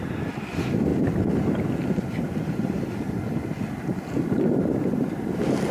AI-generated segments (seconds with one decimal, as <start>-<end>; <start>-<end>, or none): none

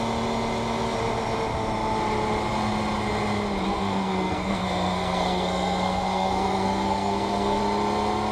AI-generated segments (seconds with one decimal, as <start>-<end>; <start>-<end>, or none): 3.7-7.6

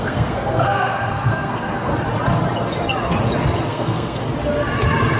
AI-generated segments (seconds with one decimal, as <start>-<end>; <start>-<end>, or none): 0.0-1.9; 3.7-4.2

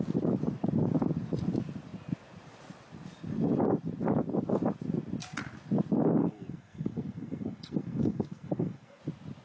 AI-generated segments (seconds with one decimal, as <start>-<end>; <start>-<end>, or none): 6.2-9.0

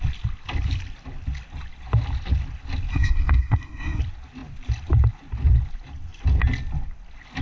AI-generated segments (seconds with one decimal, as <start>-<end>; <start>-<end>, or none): 2.9-4.0

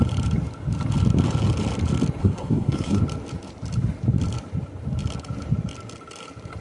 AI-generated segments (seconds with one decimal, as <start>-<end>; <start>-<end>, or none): 2.2-3.0

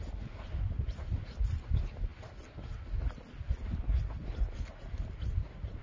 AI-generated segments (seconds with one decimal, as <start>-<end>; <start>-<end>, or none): none

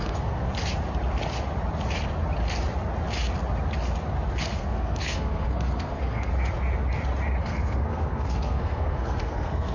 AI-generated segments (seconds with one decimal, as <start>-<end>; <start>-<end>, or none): 0.0-0.5; 4.4-6.3; 7.4-9.7